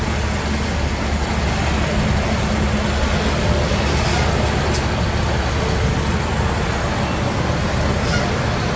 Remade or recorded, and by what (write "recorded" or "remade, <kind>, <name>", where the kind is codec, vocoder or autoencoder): recorded